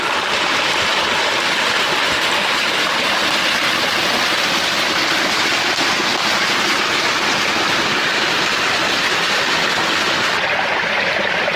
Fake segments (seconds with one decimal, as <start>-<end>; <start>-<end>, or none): none